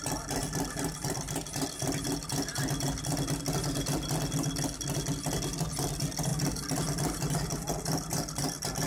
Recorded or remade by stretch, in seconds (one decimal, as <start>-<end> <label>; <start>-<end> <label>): 0.0-8.9 recorded